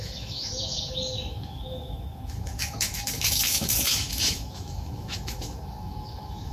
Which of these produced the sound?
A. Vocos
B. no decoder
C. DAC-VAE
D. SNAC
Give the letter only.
C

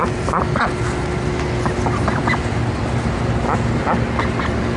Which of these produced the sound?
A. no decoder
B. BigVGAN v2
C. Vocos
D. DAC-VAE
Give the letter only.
A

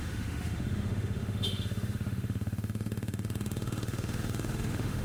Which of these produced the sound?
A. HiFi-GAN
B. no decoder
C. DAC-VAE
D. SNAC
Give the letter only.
C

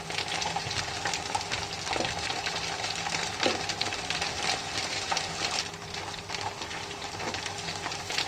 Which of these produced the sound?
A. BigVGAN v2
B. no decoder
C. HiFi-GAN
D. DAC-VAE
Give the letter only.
B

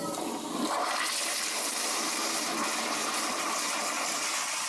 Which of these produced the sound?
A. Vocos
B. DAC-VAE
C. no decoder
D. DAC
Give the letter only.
C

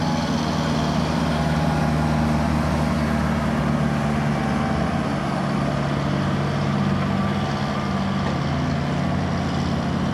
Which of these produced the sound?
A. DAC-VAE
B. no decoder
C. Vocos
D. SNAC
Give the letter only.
B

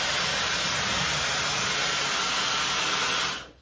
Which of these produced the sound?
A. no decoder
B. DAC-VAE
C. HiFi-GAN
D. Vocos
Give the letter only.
A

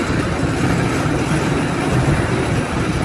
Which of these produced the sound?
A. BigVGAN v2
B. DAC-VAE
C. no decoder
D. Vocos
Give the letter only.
C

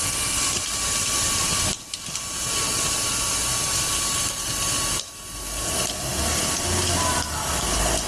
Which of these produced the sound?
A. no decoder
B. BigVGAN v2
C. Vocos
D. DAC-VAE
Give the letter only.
A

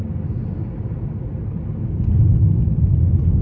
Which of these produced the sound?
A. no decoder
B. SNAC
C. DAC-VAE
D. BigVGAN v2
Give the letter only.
A